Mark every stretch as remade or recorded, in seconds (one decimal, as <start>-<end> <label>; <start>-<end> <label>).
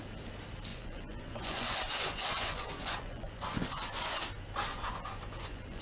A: 0.0-0.7 recorded; 0.7-4.2 remade; 4.2-4.7 recorded; 4.7-5.8 remade